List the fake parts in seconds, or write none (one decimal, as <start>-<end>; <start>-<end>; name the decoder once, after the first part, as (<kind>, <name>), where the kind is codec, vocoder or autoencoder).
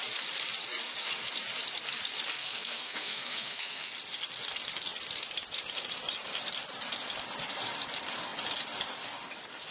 2.4-3.9 (codec, SNAC)